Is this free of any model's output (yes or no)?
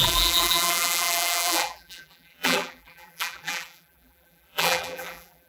no